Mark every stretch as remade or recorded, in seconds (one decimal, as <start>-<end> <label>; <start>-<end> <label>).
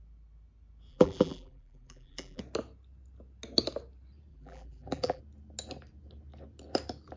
0.0-0.9 recorded; 0.9-2.4 remade; 2.4-4.3 recorded; 4.3-5.2 remade; 5.2-7.2 recorded